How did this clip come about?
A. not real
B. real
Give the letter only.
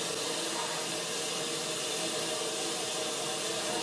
B